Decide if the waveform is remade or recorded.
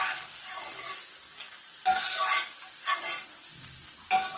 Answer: recorded